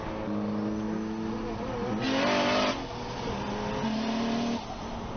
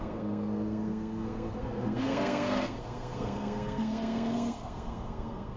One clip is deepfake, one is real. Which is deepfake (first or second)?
second